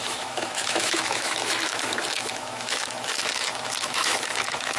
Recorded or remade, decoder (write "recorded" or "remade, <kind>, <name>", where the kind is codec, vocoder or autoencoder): remade, autoencoder, DAC-VAE